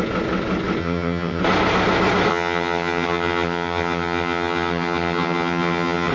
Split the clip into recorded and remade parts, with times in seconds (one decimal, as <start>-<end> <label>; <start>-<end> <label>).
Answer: 0.0-0.8 recorded; 0.8-1.4 remade; 1.4-2.3 recorded; 2.3-6.1 remade